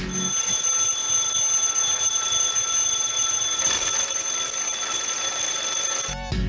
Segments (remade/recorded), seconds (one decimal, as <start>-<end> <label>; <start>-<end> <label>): 0.0-6.5 recorded